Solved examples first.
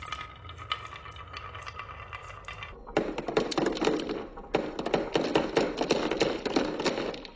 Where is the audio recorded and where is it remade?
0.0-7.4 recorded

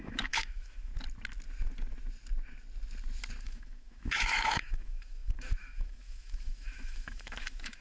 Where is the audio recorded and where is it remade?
0.0-0.9 remade; 0.9-3.4 recorded; 3.4-7.8 remade

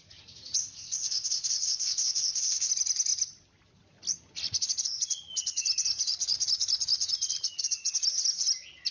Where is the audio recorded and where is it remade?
0.0-0.6 recorded; 0.6-2.7 remade; 2.7-8.9 recorded

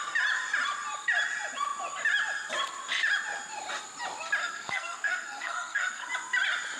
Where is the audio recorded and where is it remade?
0.0-4.4 recorded; 4.4-6.1 remade; 6.1-6.8 recorded

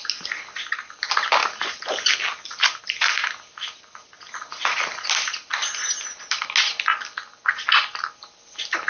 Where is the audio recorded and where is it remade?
0.0-8.9 recorded